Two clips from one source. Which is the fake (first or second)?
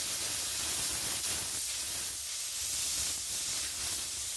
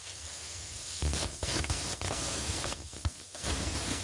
second